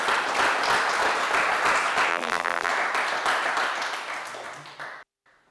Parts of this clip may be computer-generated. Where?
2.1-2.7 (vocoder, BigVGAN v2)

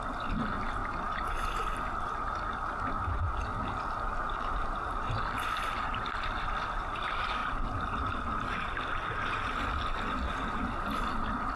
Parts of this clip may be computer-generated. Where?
none

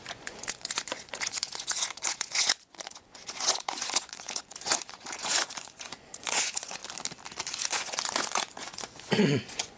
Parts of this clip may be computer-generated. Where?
0.0-6.8 (vocoder, Vocos); 7.5-9.8

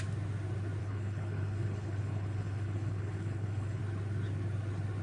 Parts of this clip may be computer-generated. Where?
0.8-3.8 (codec, HILCodec)

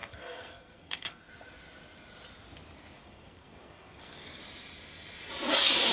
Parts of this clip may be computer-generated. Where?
0.0-1.3 (codec, SNAC); 3.0-4.4

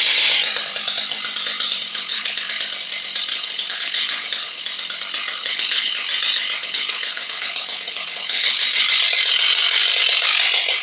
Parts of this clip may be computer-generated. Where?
1.9-2.5 (codec, HILCodec); 3.3-4.6; 5.4-5.9; 6.6-8.6